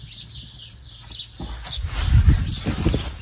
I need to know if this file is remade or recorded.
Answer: recorded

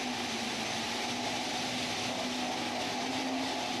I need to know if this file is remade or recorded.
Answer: recorded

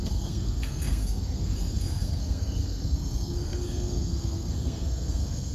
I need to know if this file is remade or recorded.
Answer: remade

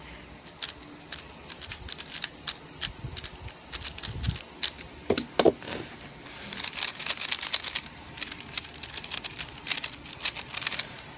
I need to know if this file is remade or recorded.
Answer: recorded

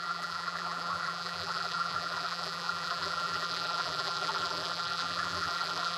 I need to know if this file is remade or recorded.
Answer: remade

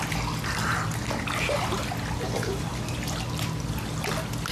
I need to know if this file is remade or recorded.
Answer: recorded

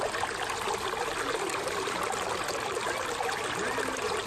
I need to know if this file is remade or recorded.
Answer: recorded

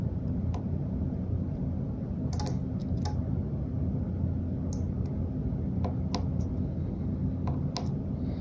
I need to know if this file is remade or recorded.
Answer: recorded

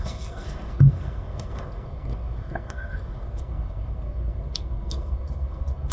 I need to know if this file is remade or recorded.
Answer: remade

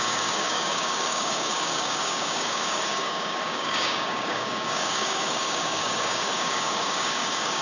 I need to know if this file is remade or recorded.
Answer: remade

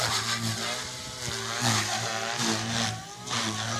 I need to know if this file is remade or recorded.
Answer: recorded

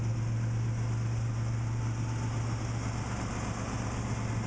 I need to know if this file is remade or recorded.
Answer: recorded